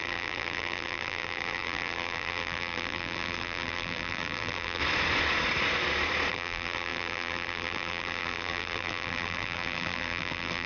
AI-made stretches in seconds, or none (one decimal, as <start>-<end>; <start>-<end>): 0.0-4.8; 6.3-10.7